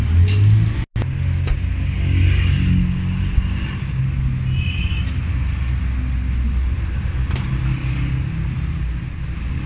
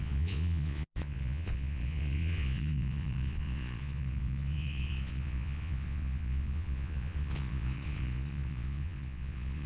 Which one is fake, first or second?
second